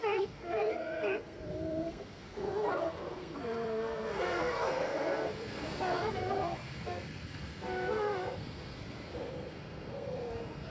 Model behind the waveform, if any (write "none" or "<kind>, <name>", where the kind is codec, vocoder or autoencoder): codec, SNAC